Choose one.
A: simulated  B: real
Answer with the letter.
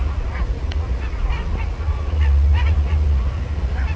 A